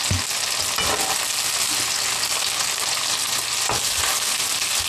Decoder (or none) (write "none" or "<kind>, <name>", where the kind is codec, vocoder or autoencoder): none